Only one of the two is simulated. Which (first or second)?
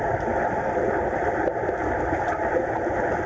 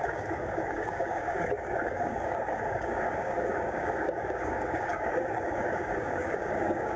second